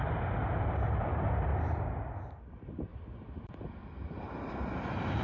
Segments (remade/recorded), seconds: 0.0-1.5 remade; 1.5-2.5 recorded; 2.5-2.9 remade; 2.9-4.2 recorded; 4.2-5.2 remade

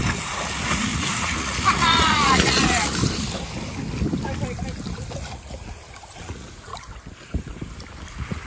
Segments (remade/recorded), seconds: 0.0-3.0 remade; 3.0-5.2 recorded; 5.2-6.7 remade; 6.7-8.1 recorded; 8.1-8.5 remade

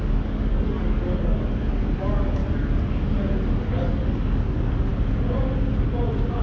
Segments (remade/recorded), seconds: 0.0-2.4 remade; 2.4-3.6 recorded; 3.6-4.9 remade; 4.9-6.4 recorded

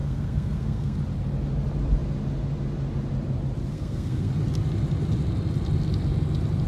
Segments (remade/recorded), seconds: 0.0-1.0 remade; 1.0-3.7 recorded; 3.7-4.3 remade; 4.3-6.7 recorded

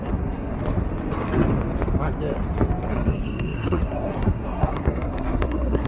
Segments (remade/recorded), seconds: 0.0-0.5 remade; 0.5-2.9 recorded; 2.9-5.9 remade

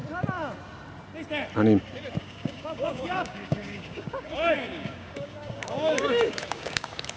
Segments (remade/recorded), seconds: 0.0-2.2 recorded; 2.2-7.2 remade

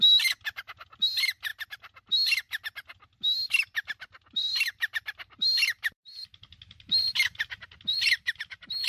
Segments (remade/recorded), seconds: 0.0-1.5 recorded; 1.5-2.1 remade; 2.1-4.5 recorded; 4.5-8.9 remade

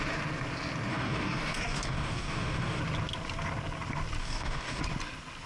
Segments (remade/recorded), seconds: 0.0-0.9 recorded; 0.9-2.8 remade; 2.8-4.2 recorded; 4.2-4.8 remade; 4.8-5.5 recorded